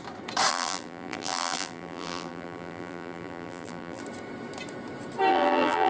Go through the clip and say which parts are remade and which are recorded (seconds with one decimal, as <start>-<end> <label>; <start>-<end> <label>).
0.0-0.5 recorded; 0.5-4.0 remade; 4.0-5.3 recorded; 5.3-5.9 remade

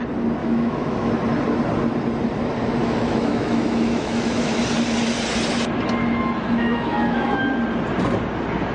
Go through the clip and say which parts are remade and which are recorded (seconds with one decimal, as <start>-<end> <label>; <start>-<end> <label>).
0.0-0.4 recorded; 0.4-1.1 remade; 1.1-2.8 recorded; 2.8-4.5 remade; 4.5-6.0 recorded; 6.0-7.4 remade; 7.4-8.7 recorded

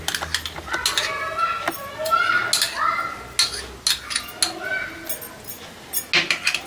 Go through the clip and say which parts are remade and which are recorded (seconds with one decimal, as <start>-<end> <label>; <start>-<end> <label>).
0.0-6.7 recorded

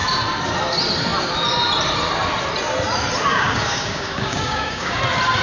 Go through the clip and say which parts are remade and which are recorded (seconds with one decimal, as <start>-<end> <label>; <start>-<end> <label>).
0.0-3.3 recorded; 3.3-5.0 remade; 5.0-5.4 recorded